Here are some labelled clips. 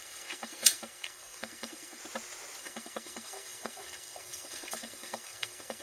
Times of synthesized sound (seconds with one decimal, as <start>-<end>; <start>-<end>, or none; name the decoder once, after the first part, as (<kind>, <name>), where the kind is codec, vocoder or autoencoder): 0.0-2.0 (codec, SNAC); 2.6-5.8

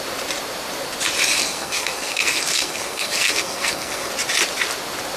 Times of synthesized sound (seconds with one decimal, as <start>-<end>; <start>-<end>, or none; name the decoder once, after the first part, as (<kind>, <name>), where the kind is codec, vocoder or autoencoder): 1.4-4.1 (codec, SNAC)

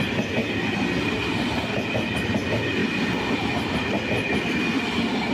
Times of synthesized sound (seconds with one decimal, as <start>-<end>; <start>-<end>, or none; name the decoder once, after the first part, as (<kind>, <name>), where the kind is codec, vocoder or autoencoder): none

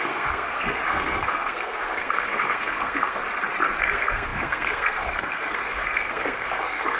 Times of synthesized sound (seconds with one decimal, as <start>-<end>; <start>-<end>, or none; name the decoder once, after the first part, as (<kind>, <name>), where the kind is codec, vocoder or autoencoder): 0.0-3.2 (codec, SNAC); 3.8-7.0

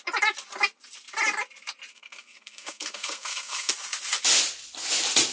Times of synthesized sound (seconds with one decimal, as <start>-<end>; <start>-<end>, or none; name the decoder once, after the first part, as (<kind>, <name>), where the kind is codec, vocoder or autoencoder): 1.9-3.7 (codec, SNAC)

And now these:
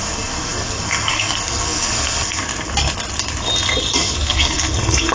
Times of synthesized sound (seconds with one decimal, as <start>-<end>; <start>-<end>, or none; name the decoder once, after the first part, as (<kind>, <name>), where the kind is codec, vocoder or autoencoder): 0.0-2.4 (codec, SNAC); 3.8-5.1

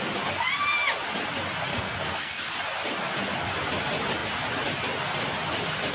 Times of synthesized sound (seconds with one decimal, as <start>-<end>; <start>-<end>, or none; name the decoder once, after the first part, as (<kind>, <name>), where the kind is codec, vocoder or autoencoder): 1.7-2.4 (codec, SNAC)